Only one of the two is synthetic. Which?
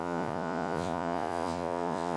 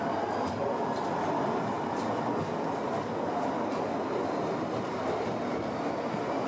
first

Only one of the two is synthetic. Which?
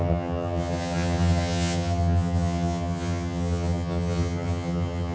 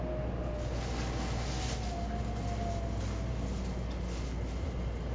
first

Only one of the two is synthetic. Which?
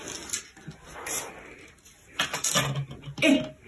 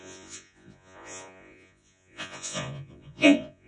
second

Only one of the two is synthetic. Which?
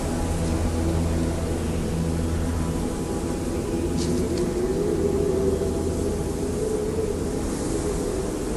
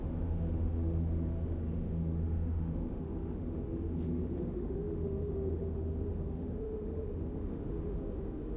second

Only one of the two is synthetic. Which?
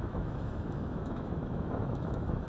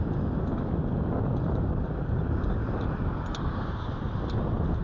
first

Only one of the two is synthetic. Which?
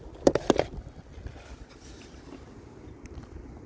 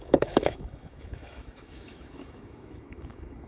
second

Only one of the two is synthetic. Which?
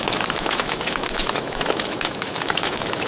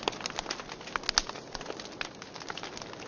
first